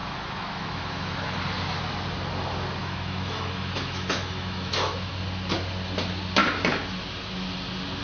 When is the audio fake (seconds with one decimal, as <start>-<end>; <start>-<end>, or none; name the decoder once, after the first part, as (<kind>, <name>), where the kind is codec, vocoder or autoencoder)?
0.0-1.4 (autoencoder, DAC-VAE); 2.8-5.1